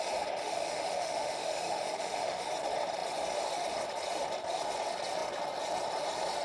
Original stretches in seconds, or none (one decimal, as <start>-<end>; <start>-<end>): 0.0-0.4; 2.5-6.4